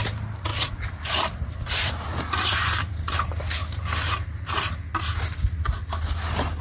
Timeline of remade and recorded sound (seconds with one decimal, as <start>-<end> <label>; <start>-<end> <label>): 0.0-0.5 recorded; 0.5-2.2 remade; 2.2-6.6 recorded